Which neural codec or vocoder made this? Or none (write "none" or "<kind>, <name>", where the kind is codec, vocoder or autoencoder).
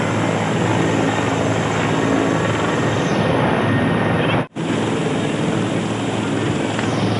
none